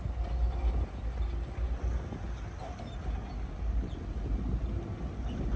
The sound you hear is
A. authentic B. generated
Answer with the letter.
A